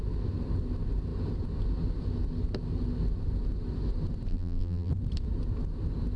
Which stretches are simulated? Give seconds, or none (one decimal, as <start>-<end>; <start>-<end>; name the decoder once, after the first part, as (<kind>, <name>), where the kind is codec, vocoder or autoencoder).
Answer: 4.3-4.9 (vocoder, BigVGAN v2)